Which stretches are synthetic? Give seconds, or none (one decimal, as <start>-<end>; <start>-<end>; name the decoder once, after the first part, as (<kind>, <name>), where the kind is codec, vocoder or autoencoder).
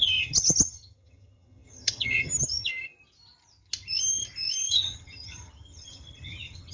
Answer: 0.0-2.7 (vocoder, HiFi-GAN); 4.7-6.7